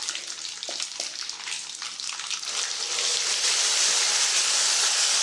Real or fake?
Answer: real